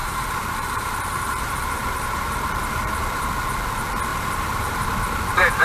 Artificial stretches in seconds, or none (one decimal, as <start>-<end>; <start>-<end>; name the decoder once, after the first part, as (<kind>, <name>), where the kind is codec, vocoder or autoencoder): 0.0-3.3 (vocoder, BigVGAN v2); 4.1-4.9